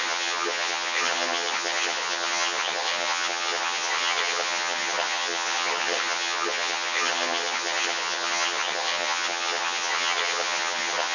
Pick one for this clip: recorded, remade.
remade